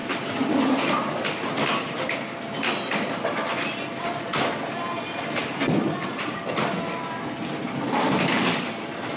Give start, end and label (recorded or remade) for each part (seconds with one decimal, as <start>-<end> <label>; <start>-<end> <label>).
0.0-9.2 recorded